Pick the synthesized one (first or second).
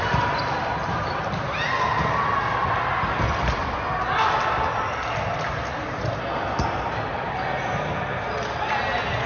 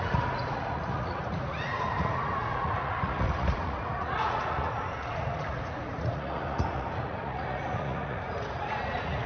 second